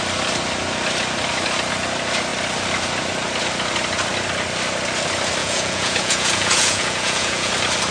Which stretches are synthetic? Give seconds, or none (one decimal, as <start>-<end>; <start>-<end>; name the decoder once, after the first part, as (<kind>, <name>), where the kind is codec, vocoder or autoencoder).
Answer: 5.4-7.5 (vocoder, Vocos)